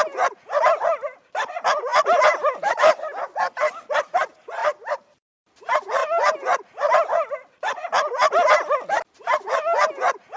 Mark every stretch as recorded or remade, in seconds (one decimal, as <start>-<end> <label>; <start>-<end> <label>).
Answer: 0.0-1.9 recorded; 1.9-2.8 remade; 2.8-10.4 recorded